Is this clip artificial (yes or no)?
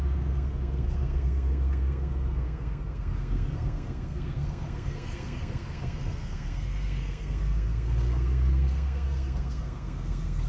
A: yes